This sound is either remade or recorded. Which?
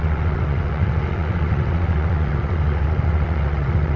remade